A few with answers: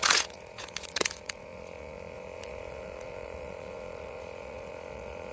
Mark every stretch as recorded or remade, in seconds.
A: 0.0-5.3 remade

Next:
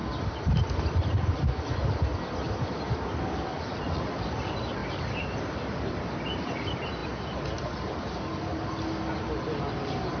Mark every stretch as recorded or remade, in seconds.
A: 0.0-3.5 recorded; 3.5-4.1 remade; 4.1-10.2 recorded

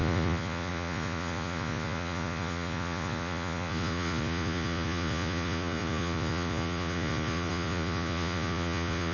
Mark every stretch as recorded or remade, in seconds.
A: 0.0-9.1 remade

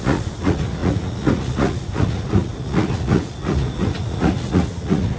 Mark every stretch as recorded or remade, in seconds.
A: 0.0-5.2 remade

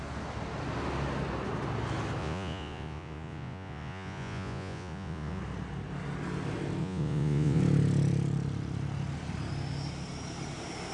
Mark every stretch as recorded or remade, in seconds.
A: 0.0-2.2 recorded; 2.2-5.4 remade; 5.4-6.8 recorded; 6.8-7.6 remade; 7.6-10.9 recorded

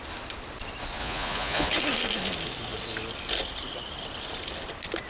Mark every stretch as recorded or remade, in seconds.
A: 0.0-1.0 recorded; 1.0-1.7 remade; 1.7-5.1 recorded